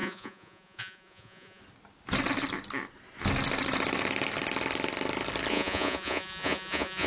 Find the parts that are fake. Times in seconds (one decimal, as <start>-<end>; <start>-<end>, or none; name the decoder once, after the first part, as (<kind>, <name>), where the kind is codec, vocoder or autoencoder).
0.0-1.6 (vocoder, Vocos); 5.5-7.1